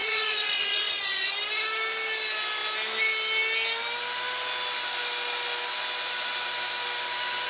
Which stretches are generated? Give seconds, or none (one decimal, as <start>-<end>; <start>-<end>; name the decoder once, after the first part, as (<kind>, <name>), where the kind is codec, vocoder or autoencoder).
0.0-1.3 (vocoder, Vocos)